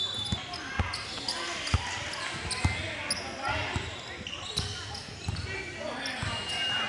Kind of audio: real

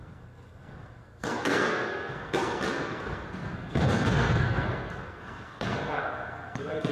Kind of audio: fake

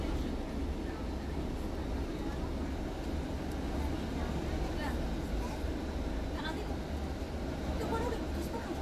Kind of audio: real